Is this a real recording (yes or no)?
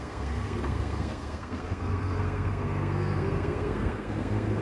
no